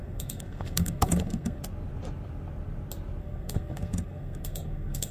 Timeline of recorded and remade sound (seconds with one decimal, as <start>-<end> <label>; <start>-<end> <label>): 0.0-1.6 remade; 1.6-3.2 recorded; 3.2-5.1 remade